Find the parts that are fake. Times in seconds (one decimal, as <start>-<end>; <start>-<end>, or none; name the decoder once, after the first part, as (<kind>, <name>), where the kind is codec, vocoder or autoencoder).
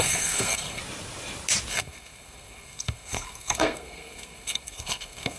0.0-0.8 (codec, SNAC); 1.7-5.4